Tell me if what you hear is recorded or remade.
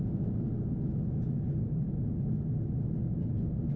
recorded